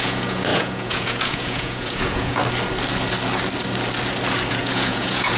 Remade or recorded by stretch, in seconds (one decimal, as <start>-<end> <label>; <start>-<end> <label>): 0.0-2.4 remade; 2.4-4.5 recorded; 4.5-5.4 remade